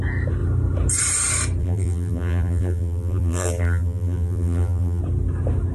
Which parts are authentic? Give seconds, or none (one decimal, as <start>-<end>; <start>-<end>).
0.0-1.6; 5.0-5.7